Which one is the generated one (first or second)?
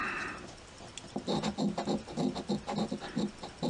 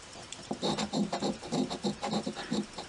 second